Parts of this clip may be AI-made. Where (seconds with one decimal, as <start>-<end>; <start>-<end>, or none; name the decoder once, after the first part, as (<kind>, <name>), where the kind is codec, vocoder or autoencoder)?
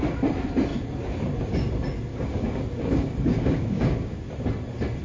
2.1-4.2 (codec, DAC)